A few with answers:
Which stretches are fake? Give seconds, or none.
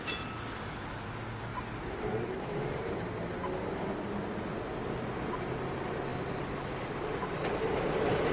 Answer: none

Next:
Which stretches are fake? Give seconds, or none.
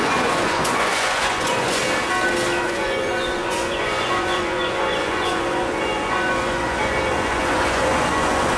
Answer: 0.0-1.8 (vocoder, Vocos); 2.6-8.6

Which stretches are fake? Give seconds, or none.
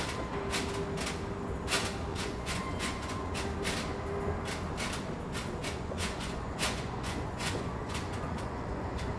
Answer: 2.1-3.4 (vocoder, Vocos); 5.6-9.2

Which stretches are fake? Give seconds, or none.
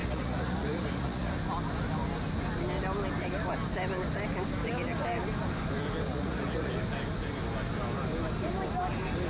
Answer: 0.0-1.3 (vocoder, Vocos); 6.1-6.7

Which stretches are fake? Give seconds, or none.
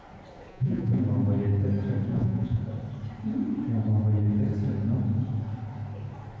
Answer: 0.5-1.0 (vocoder, Vocos); 2.1-2.6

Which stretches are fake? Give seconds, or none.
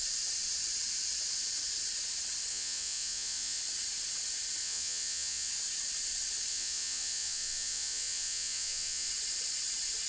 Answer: 2.5-3.6 (vocoder, Vocos); 4.6-5.5; 6.5-9.1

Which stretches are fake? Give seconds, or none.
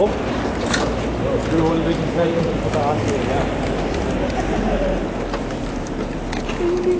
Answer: none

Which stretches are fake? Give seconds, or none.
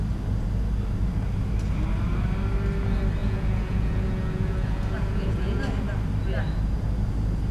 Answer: 3.2-5.6 (vocoder, Vocos)